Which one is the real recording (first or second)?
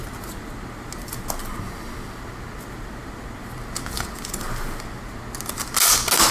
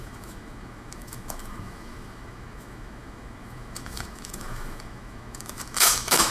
first